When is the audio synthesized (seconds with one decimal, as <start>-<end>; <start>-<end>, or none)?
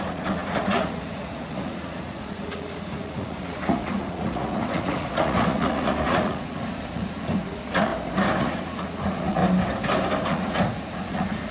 0.0-7.9; 8.4-9.4; 10.3-11.5